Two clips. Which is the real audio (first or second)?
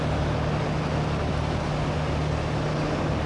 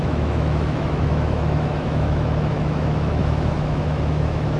first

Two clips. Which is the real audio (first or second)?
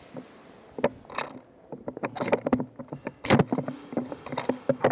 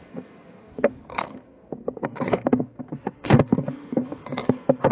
first